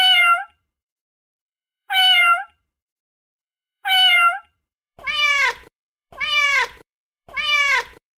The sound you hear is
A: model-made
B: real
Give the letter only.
A